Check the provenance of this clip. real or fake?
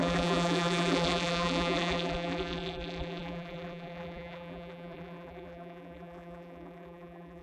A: fake